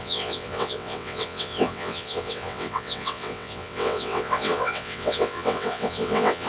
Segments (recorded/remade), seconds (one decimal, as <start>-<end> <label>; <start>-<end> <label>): 0.0-6.5 remade